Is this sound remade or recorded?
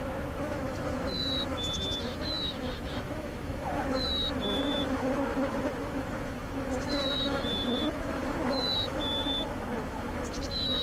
remade